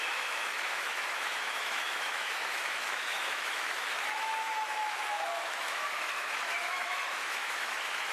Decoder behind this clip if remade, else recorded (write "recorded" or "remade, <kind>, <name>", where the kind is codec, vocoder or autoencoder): remade, autoencoder, DAC-VAE